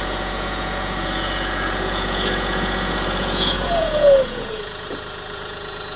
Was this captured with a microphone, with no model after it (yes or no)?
no